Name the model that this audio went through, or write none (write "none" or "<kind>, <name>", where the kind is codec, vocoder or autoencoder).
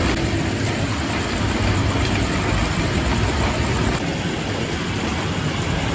none